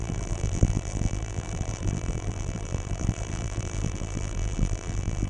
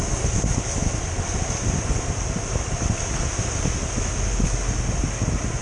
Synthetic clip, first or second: first